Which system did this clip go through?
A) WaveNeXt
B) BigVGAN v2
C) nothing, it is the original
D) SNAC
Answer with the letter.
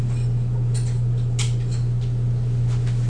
C